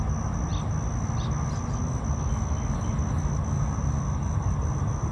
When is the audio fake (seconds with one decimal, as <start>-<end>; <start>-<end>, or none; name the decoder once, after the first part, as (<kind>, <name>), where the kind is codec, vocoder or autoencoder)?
none